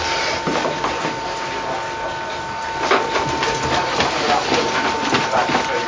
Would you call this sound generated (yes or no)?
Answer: no